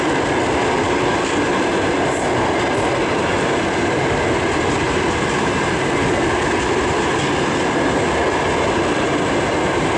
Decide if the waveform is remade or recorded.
recorded